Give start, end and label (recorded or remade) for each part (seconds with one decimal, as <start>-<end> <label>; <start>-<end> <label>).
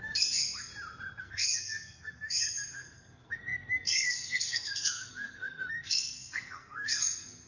0.0-0.7 remade; 0.7-1.2 recorded; 1.2-7.5 remade